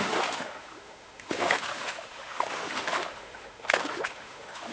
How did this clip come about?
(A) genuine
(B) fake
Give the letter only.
B